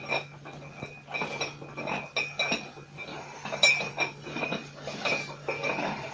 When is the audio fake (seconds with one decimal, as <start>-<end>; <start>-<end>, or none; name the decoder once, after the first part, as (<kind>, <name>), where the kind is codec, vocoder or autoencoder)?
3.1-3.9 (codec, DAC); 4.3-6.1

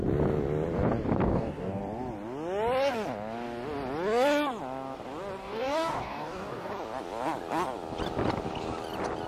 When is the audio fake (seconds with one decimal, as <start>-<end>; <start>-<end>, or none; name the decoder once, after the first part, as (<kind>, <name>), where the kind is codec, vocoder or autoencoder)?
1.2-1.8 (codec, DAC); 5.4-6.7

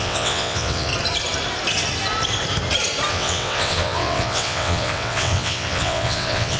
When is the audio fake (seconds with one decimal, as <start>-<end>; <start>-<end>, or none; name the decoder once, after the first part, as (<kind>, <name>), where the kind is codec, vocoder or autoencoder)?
0.0-0.9 (vocoder, WaveNeXt); 3.1-6.6

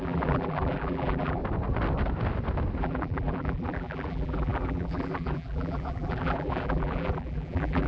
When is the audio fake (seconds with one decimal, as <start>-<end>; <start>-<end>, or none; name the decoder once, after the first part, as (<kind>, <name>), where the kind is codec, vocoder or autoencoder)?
0.0-1.4 (vocoder, BigVGAN v2); 2.8-7.9